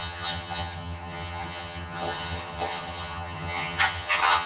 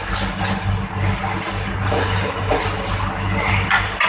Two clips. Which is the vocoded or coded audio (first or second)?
first